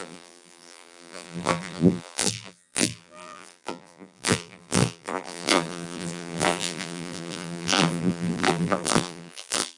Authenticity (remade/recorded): remade